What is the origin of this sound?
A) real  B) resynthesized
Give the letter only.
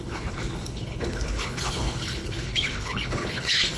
B